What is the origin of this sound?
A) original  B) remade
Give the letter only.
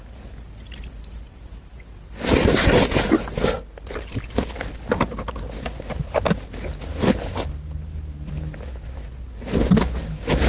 A